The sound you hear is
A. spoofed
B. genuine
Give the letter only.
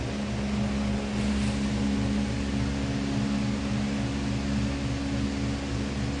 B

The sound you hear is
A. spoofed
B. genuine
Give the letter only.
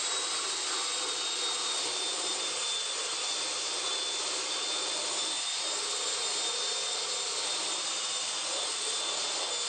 B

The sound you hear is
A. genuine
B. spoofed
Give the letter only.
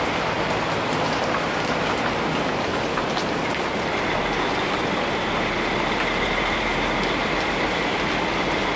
A